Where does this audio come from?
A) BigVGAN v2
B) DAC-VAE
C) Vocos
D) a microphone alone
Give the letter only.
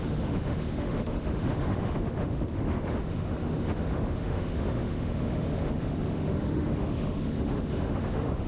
B